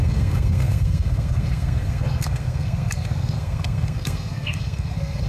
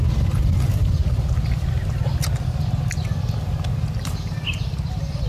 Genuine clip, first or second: second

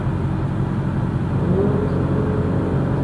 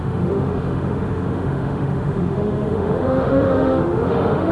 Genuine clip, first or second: first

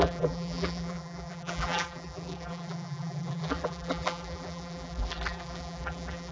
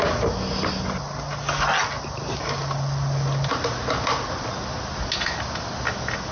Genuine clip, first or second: second